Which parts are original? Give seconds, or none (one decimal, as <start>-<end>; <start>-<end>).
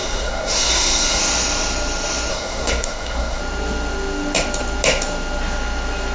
1.2-2.3; 3.4-6.1